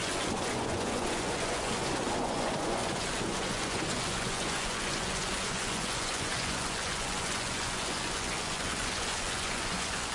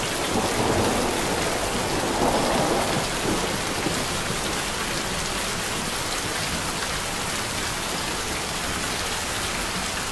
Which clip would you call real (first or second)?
second